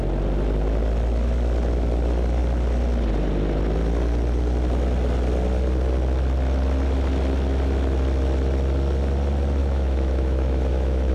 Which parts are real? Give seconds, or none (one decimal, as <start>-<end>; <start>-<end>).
0.0-9.6